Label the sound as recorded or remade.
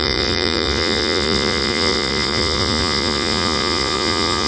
remade